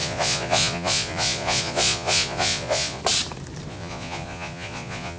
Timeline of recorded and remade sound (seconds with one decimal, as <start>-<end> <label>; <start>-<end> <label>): 0.0-3.0 remade; 3.0-3.7 recorded; 3.7-5.2 remade